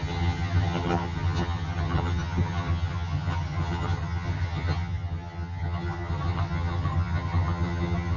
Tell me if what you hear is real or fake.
fake